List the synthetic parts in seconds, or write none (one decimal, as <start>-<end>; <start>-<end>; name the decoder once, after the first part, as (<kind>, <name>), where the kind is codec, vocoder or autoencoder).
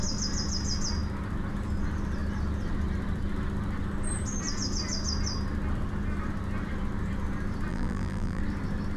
7.7-8.4 (vocoder, BigVGAN v2)